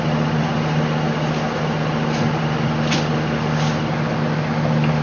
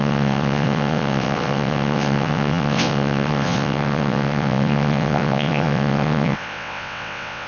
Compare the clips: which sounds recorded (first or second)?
first